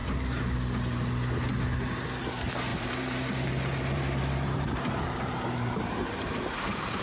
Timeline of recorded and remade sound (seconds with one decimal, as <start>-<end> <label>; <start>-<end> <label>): 0.0-2.7 recorded; 2.7-7.0 remade